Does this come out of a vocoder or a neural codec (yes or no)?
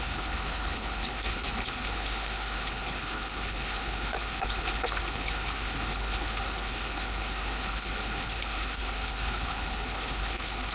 yes